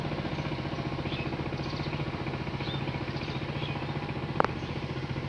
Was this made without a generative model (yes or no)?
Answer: yes